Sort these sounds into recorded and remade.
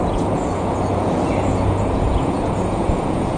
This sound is remade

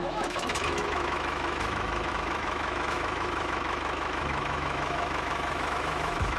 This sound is remade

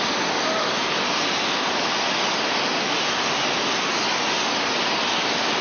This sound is recorded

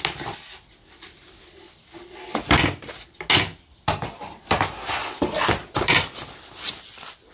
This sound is recorded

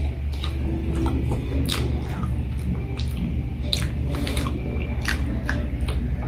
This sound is recorded